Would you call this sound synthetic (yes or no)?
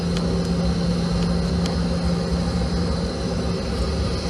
no